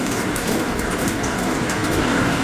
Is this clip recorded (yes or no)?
no